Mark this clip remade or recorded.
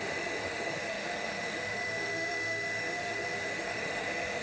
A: remade